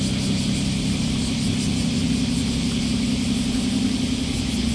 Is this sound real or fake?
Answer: real